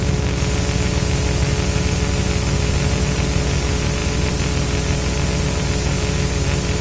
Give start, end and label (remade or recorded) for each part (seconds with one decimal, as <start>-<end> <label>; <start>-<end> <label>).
0.0-6.8 recorded